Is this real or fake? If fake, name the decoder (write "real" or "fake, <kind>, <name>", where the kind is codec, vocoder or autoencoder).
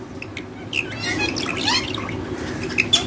real